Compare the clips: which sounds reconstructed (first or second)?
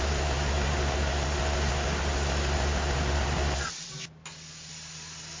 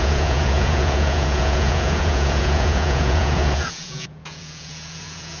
second